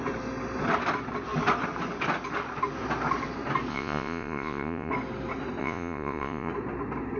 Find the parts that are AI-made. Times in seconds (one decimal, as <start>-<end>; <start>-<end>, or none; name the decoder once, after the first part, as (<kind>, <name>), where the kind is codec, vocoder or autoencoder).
3.7-4.9 (vocoder, Vocos); 5.6-6.5